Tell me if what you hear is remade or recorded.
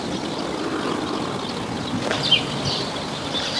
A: recorded